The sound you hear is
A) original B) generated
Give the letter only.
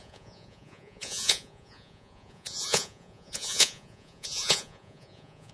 B